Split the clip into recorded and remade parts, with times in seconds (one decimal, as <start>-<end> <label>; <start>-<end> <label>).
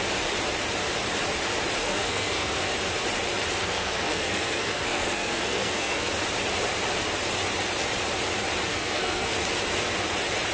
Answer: 0.0-1.8 recorded; 1.8-2.7 remade; 2.7-3.6 recorded; 3.6-6.1 remade; 6.1-8.7 recorded; 8.7-9.3 remade; 9.3-10.5 recorded